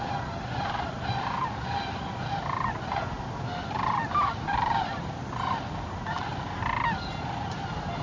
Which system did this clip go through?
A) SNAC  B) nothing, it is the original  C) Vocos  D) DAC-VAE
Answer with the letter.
B